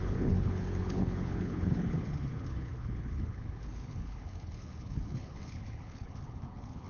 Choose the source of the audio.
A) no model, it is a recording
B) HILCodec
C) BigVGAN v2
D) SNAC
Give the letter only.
B